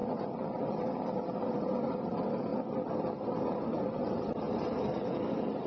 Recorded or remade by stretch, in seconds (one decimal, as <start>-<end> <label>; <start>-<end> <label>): 0.0-5.7 recorded